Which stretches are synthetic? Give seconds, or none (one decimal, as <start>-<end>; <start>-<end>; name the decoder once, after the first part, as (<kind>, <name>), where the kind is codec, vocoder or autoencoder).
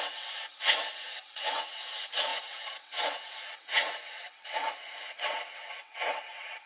0.0-6.7 (vocoder, WaveNeXt)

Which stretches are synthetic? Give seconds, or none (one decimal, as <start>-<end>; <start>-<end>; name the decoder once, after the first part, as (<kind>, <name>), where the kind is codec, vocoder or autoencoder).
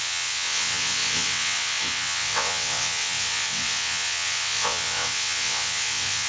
0.0-6.3 (vocoder, WaveNeXt)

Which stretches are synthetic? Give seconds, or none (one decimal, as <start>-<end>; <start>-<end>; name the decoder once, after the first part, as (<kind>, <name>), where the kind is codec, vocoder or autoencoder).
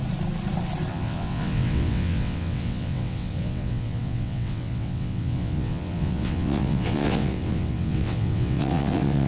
0.9-9.3 (vocoder, WaveNeXt)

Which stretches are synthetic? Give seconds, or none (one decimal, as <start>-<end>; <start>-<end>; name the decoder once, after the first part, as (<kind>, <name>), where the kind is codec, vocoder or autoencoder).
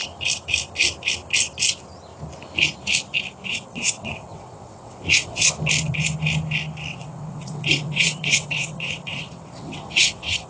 3.5-5.5 (vocoder, WaveNeXt); 6.9-10.5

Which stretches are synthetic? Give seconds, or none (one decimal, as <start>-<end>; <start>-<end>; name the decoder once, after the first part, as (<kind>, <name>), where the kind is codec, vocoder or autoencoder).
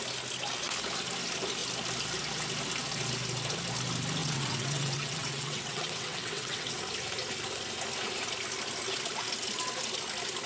4.2-6.8 (vocoder, WaveNeXt)